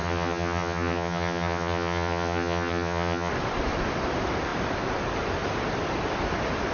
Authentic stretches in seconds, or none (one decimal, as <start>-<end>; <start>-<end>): 3.3-6.7